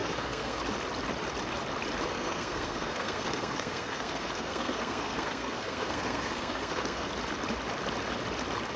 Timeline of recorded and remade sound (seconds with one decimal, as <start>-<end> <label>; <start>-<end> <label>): 0.0-0.6 remade; 0.6-2.1 recorded; 2.1-7.1 remade; 7.1-8.8 recorded